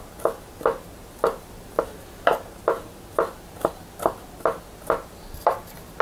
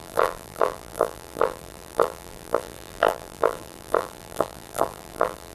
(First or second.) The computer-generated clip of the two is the second